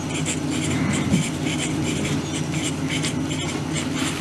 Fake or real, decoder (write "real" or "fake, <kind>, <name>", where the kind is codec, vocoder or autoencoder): real